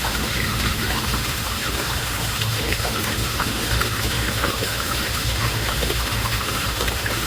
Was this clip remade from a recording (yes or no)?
yes